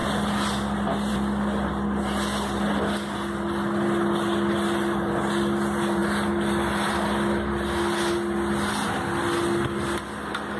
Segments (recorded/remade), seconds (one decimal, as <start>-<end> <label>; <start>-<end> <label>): 0.0-10.6 recorded